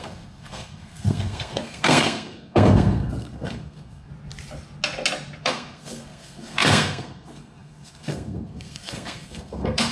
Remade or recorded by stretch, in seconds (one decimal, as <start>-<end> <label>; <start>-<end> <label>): 0.0-4.1 remade; 4.1-5.4 recorded; 5.4-9.9 remade